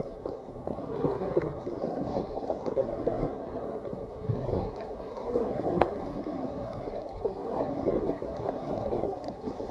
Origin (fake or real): fake